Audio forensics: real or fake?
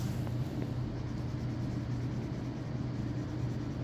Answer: real